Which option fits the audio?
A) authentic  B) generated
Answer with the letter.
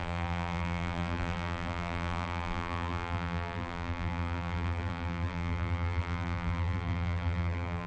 B